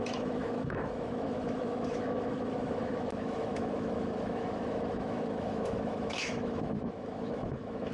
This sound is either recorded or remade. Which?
remade